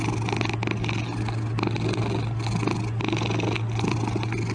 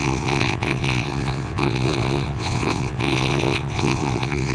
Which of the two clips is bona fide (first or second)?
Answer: first